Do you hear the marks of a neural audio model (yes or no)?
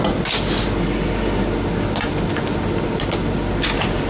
no